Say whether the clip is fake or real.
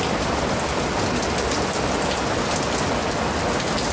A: real